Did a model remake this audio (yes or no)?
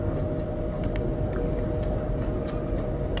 no